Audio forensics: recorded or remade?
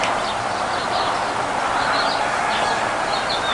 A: recorded